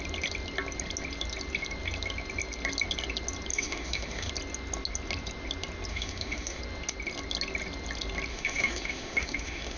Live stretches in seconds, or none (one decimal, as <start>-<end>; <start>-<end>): 0.0-3.5; 4.3-5.9; 6.6-8.3